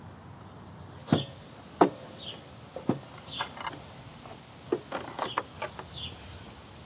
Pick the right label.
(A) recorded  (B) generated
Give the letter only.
A